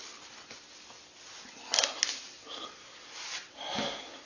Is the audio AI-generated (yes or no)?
no